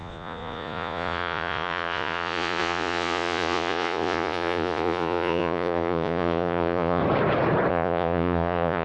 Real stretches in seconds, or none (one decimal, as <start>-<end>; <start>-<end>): 7.0-7.7